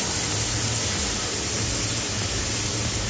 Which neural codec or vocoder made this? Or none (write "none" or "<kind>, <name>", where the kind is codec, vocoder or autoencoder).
none